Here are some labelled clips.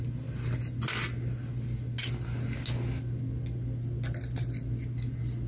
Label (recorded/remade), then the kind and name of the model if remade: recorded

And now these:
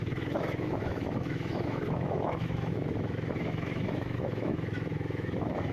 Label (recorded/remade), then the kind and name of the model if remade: remade, autoencoder, DAC-VAE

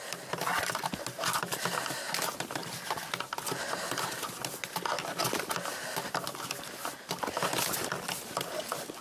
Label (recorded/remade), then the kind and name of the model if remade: recorded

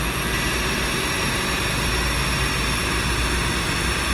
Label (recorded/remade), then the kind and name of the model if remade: recorded